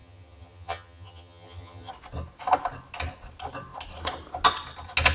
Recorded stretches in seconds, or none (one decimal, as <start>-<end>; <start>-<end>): 1.9-5.1